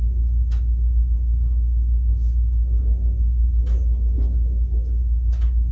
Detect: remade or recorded recorded